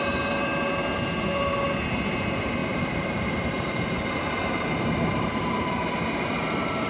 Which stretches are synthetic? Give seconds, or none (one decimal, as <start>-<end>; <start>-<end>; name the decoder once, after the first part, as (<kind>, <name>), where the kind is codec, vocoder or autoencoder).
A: 0.0-0.5 (vocoder, BigVGAN v2); 1.8-6.9